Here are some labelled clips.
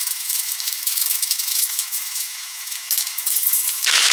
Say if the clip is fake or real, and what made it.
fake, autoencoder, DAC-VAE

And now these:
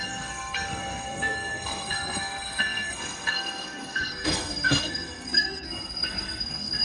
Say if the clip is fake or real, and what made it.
fake, codec, SNAC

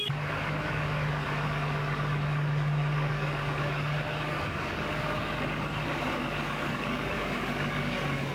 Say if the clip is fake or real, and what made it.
fake, codec, DAC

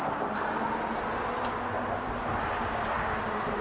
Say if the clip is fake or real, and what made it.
real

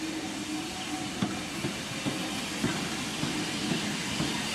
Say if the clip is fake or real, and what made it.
real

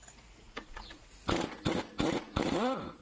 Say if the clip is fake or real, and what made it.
fake, vocoder, Vocos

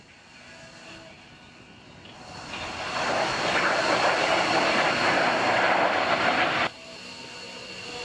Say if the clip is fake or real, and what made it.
real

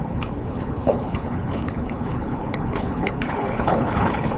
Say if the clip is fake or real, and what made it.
fake, codec, HILCodec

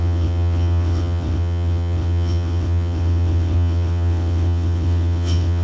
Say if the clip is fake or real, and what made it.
fake, vocoder, WaveNeXt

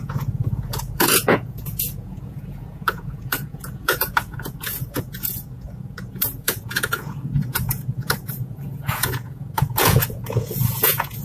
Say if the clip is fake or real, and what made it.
fake, vocoder, Vocos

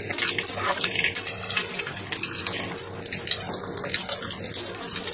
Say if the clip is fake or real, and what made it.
real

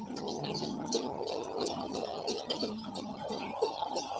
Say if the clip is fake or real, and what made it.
fake, vocoder, HiFi-GAN